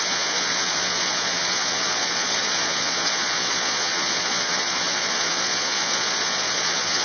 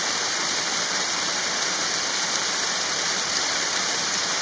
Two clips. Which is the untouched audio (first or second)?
second